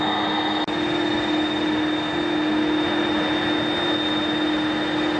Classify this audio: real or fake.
real